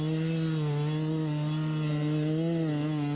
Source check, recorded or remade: recorded